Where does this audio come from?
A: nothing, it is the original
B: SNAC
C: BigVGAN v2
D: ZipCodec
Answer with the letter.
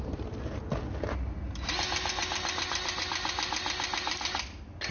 A